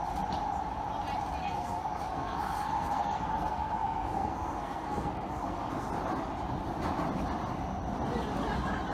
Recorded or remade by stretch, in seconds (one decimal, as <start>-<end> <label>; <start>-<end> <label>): 0.0-1.4 recorded; 1.4-5.9 remade; 5.9-8.9 recorded